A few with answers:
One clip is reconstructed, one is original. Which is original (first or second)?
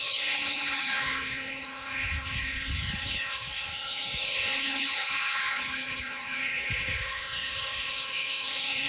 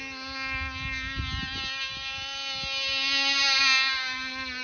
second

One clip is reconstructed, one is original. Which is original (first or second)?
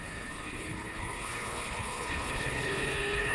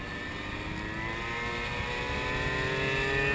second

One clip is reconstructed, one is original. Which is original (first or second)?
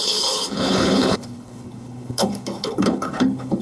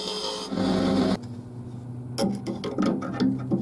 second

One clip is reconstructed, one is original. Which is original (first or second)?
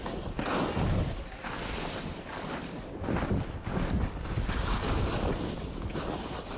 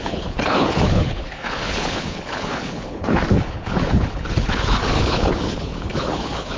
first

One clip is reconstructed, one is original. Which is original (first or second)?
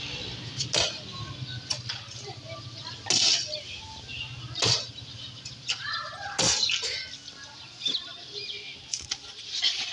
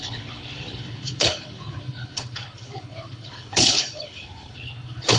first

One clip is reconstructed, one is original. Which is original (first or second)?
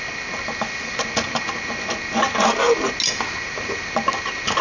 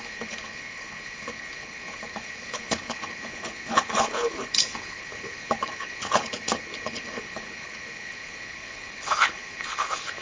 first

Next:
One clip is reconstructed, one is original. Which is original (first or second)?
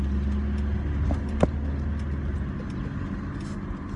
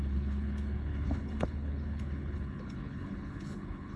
first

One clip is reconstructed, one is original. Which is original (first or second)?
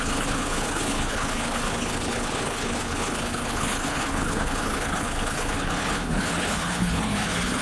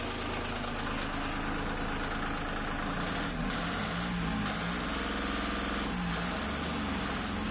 second